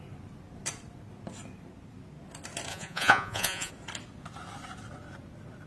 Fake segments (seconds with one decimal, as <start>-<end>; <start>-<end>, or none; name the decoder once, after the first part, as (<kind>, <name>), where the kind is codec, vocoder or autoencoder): 2.7-3.7 (vocoder, Vocos)